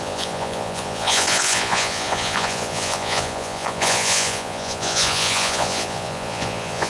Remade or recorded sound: remade